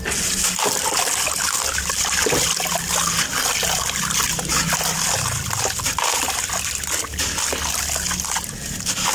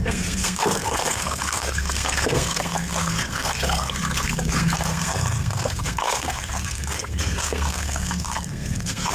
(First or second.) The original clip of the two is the first